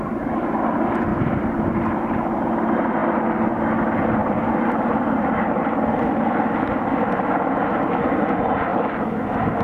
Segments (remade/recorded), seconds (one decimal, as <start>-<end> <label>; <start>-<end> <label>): 0.0-1.1 recorded; 1.1-2.2 remade; 2.2-4.2 recorded; 4.2-6.2 remade; 6.2-9.6 recorded